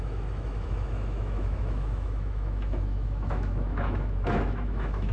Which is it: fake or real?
fake